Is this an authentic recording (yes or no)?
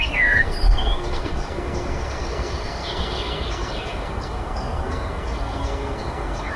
no